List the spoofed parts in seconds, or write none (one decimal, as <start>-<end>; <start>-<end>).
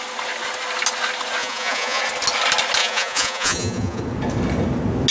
1.4-2.0; 2.8-4.0